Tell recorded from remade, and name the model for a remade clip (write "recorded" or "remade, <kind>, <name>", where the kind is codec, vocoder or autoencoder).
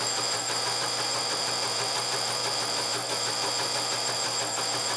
remade, vocoder, BigVGAN v2